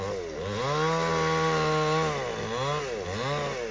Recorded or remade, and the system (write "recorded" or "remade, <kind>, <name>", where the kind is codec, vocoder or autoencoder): recorded